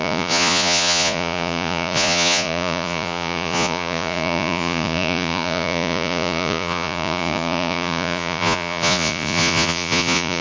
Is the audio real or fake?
fake